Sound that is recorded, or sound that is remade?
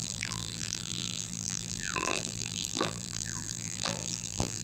remade